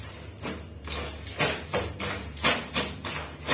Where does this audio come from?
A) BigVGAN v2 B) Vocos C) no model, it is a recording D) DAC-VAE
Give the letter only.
C